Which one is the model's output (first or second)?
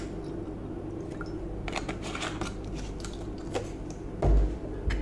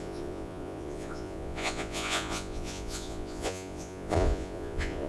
second